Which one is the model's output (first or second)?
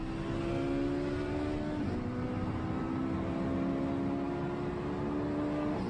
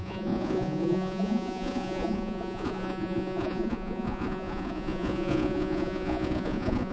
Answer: second